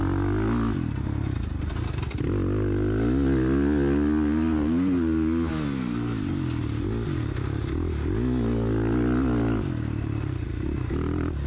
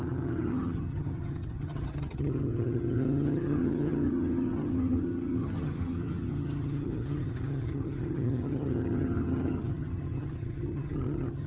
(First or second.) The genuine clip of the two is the first